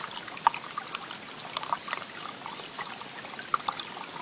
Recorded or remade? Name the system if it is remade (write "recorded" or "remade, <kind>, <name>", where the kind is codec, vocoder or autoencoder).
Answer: recorded